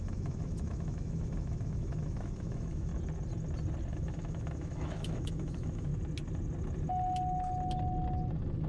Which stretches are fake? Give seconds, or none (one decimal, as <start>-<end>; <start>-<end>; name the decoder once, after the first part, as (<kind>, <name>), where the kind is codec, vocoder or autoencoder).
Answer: 0.0-2.9 (autoencoder, DAC-VAE); 3.9-5.9